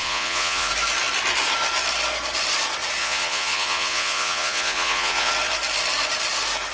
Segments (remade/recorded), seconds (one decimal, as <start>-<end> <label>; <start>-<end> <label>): 0.0-0.7 remade; 0.7-3.0 recorded; 3.0-5.3 remade; 5.3-6.7 recorded